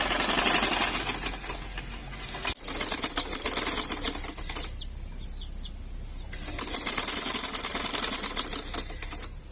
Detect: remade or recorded recorded